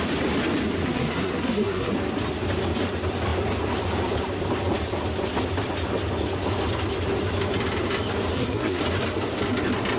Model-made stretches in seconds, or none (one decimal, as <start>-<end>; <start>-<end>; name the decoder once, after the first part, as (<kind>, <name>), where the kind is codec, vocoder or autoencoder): 0.8-1.9 (codec, SNAC); 8.3-8.8